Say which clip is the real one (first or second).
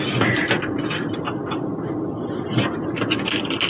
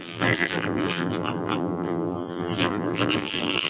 first